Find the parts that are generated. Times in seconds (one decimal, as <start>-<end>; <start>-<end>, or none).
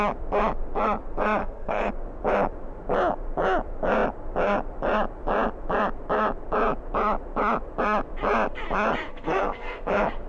1.4-1.9; 9.1-9.9